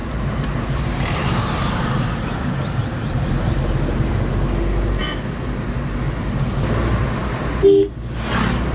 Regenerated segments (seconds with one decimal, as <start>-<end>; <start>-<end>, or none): 0.0-3.3